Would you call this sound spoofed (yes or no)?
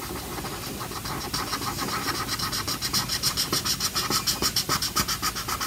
no